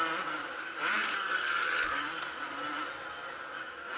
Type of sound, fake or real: real